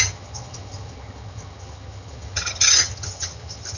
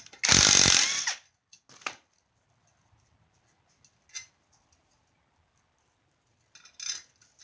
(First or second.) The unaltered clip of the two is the second